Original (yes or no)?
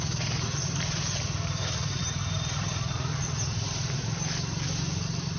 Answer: no